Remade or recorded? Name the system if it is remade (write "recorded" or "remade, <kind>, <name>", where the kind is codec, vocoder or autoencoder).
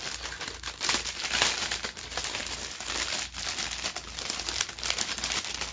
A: recorded